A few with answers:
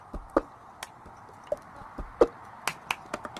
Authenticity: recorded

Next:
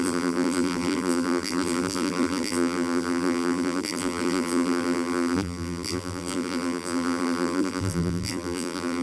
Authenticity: remade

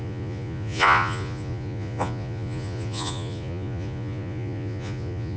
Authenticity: remade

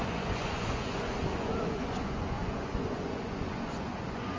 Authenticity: remade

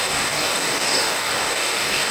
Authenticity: remade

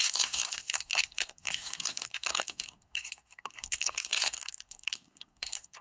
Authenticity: remade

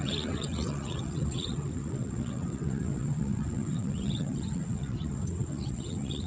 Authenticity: remade